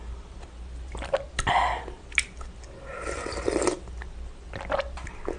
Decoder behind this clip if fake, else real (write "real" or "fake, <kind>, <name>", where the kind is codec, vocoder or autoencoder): real